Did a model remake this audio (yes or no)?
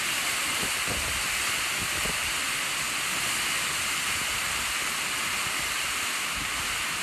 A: no